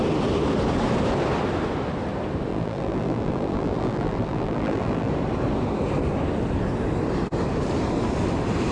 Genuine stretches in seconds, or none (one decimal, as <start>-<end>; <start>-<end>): 0.0-2.5; 5.1-8.7